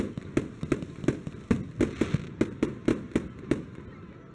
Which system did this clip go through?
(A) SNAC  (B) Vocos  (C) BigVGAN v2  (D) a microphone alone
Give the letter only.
D